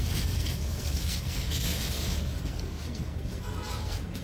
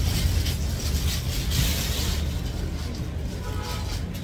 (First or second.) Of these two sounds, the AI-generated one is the first